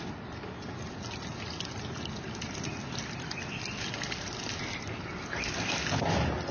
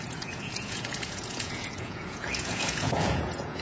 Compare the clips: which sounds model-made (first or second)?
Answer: second